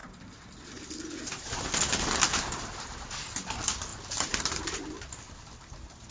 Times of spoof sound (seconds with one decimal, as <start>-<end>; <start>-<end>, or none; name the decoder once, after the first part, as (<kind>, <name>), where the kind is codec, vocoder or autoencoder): 2.0-6.1 (vocoder, BigVGAN v2)